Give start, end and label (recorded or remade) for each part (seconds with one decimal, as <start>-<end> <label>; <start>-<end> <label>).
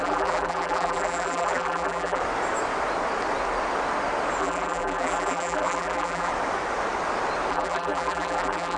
0.0-2.2 remade; 2.2-4.4 recorded; 4.4-6.3 remade; 6.3-7.5 recorded; 7.5-8.8 remade